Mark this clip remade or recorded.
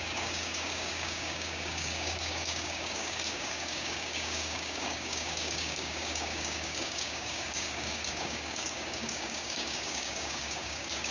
remade